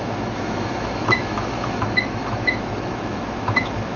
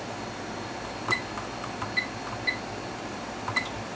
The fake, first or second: first